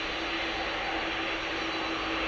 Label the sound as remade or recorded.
recorded